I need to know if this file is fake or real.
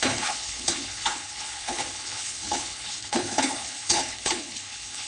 fake